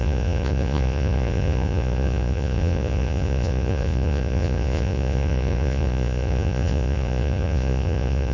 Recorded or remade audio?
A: remade